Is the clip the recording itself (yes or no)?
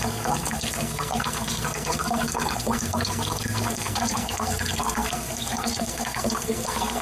no